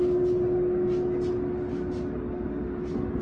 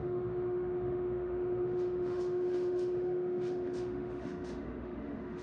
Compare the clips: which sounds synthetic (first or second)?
second